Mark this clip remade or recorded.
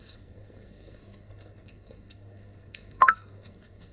remade